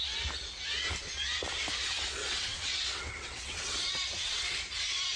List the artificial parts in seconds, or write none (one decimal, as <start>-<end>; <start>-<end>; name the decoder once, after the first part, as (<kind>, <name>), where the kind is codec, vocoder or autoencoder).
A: 2.2-4.6 (vocoder, WaveNeXt)